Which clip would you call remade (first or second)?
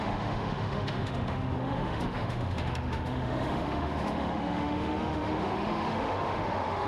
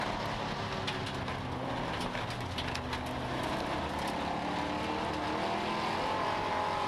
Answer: first